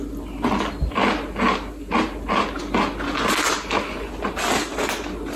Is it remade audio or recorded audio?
recorded